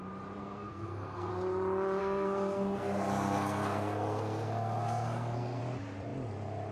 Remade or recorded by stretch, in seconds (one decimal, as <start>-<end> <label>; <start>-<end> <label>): 0.0-0.4 recorded; 0.4-1.3 remade; 1.3-2.0 recorded; 2.0-5.6 remade; 5.6-6.7 recorded